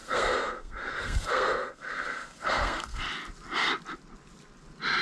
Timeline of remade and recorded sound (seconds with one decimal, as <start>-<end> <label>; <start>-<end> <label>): 0.0-3.0 remade; 3.0-5.0 recorded